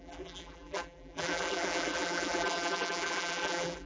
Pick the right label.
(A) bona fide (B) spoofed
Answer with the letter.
B